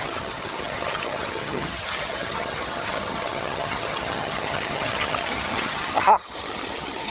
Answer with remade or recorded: remade